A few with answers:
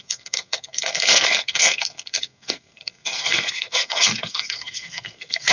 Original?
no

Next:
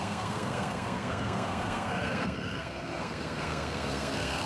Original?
no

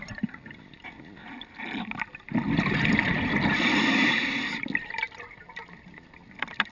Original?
yes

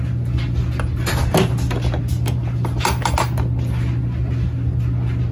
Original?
yes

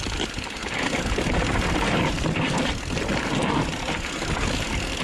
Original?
yes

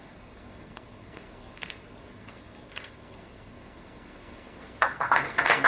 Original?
no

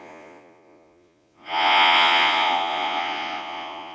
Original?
no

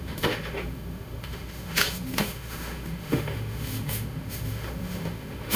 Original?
no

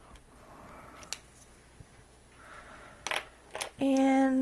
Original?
yes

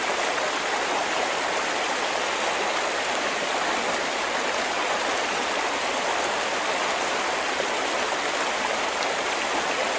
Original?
yes